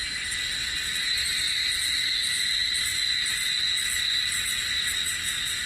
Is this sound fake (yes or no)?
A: no